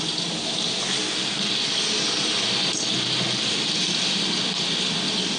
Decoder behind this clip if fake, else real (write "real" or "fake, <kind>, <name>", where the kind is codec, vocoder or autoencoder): real